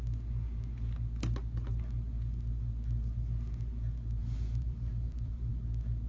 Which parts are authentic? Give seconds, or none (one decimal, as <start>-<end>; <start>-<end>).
0.0-4.2; 5.5-6.1